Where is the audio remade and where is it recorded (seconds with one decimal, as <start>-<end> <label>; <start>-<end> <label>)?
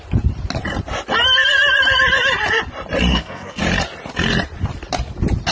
0.0-3.1 recorded; 3.1-3.6 remade; 3.6-5.5 recorded